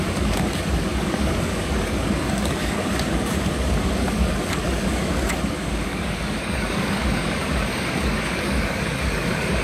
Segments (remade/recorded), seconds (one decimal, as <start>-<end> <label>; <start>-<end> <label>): 0.0-9.6 remade